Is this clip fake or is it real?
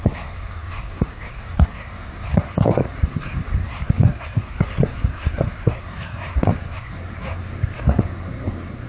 fake